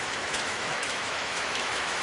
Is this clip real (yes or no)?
no